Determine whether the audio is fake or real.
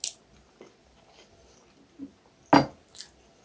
real